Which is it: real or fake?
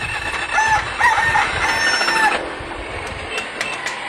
real